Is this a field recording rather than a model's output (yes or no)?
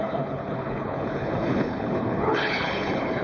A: no